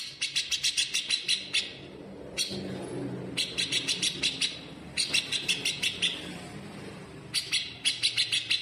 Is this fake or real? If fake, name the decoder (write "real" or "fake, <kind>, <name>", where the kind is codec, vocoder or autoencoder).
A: real